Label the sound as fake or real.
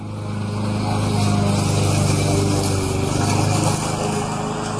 real